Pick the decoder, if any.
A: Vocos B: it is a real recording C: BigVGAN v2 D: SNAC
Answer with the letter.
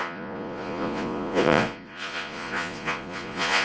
A